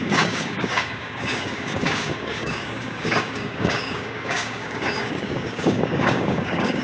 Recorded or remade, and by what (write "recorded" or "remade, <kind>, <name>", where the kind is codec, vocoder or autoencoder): remade, codec, DAC